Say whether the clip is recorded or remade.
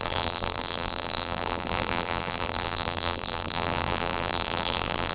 remade